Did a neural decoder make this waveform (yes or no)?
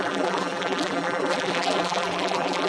yes